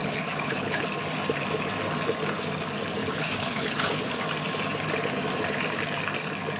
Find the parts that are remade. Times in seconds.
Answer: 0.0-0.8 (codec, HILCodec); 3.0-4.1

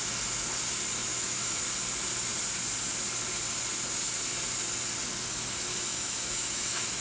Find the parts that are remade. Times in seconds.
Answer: 1.1-1.6 (autoencoder, DAC-VAE); 5.9-7.0

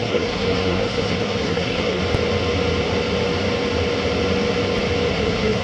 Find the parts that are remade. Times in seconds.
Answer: 0.0-2.0 (codec, SNAC); 5.1-5.6